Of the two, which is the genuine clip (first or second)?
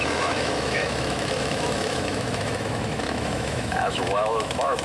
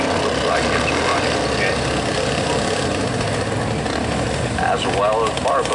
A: second